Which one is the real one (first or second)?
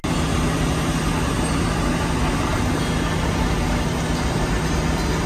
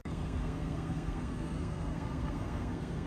first